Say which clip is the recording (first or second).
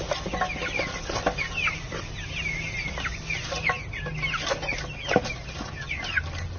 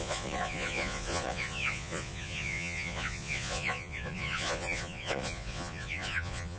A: first